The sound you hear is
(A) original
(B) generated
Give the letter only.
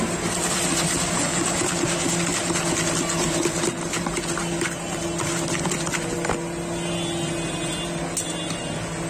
A